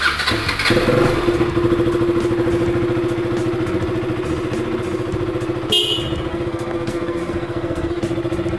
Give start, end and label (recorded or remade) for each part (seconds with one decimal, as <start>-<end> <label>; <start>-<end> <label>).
0.0-6.3 recorded; 6.3-8.0 remade; 8.0-8.6 recorded

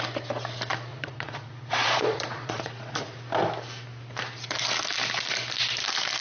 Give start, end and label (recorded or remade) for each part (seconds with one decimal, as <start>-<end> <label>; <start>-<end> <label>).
0.0-0.9 recorded; 0.9-3.2 remade; 3.2-6.2 recorded